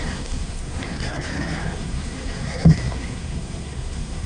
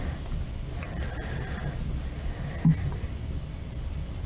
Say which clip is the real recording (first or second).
second